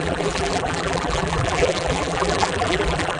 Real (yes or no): no